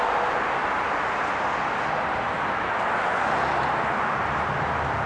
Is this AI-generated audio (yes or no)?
no